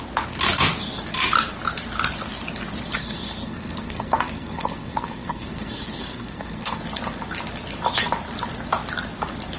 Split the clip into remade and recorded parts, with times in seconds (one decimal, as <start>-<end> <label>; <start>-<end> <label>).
0.0-3.0 recorded; 3.0-6.8 remade; 6.8-9.6 recorded